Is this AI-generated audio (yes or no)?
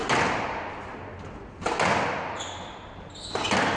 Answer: no